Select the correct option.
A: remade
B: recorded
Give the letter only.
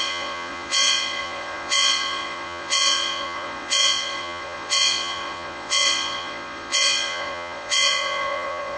A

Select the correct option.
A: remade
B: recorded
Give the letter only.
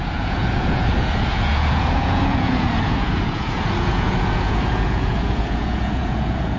A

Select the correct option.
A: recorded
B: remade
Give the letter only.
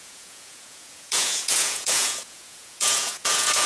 B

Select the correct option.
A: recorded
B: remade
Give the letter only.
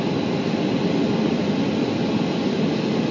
A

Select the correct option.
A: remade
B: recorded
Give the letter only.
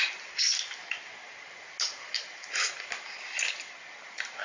B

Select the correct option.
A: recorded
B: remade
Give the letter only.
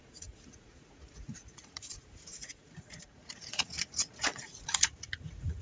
B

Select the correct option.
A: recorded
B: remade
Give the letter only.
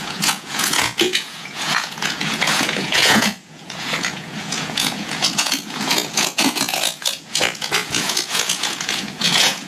B